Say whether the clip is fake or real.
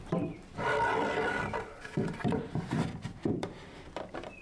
fake